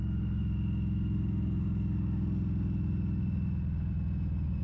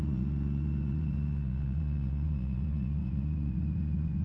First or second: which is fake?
second